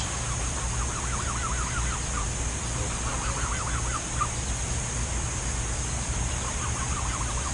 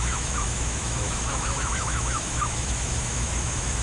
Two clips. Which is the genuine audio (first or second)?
first